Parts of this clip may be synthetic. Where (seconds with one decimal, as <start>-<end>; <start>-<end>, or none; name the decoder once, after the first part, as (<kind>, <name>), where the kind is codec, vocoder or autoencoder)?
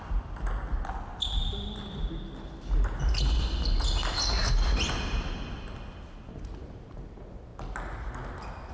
none